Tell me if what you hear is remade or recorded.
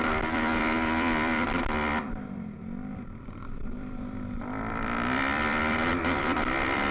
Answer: remade